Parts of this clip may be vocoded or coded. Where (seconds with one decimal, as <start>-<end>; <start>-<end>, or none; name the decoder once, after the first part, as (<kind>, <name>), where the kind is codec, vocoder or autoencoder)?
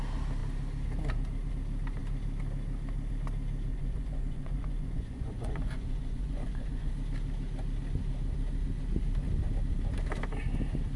3.7-6.9 (vocoder, Vocos)